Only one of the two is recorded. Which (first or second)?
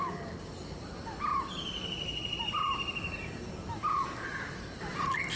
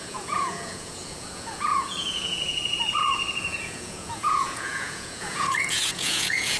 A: first